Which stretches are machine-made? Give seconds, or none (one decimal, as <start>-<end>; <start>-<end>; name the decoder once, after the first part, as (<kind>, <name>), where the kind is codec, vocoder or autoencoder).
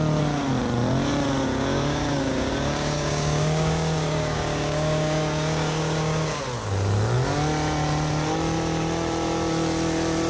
1.4-6.4 (codec, DAC)